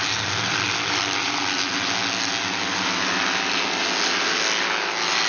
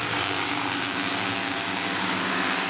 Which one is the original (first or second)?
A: first